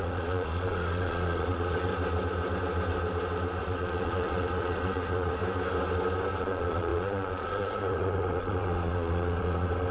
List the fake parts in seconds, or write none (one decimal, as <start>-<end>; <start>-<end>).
0.0-1.9; 3.6-5.4; 6.4-9.9